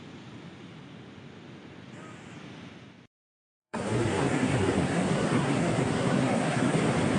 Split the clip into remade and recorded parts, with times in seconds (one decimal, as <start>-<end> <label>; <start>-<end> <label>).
0.0-3.3 recorded; 3.3-6.8 remade; 6.8-7.2 recorded